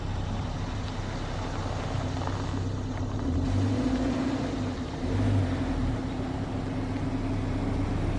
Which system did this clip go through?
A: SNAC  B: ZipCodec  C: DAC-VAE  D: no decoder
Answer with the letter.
D